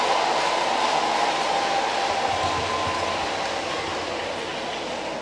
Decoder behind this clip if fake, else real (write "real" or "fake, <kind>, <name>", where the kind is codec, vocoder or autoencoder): real